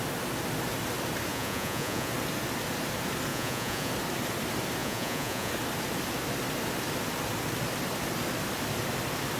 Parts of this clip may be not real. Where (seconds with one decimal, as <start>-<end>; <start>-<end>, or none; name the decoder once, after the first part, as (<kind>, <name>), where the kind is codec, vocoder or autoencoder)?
1.3-2.1 (vocoder, Vocos); 3.3-3.9; 4.8-5.5